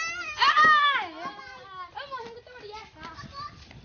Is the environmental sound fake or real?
real